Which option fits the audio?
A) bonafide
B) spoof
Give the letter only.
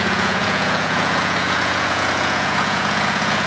B